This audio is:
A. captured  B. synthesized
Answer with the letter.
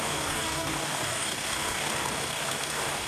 B